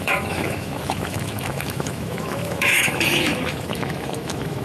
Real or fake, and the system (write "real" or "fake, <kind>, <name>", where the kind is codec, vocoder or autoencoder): fake, autoencoder, DAC-VAE